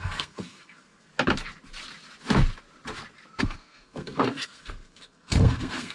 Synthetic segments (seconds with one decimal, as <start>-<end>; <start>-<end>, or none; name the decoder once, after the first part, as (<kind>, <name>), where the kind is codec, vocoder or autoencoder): 0.0-1.1 (codec, SNAC); 3.4-5.9